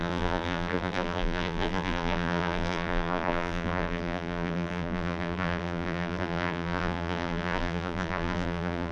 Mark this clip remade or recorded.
remade